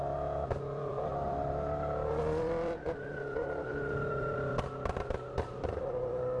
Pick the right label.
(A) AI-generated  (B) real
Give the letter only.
A